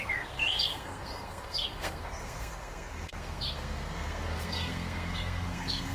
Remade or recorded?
remade